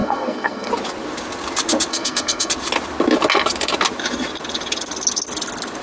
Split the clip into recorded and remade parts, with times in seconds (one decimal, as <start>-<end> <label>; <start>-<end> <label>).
0.0-0.7 remade; 0.7-1.9 recorded; 1.9-2.5 remade; 2.5-5.8 recorded